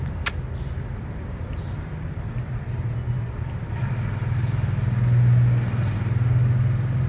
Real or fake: real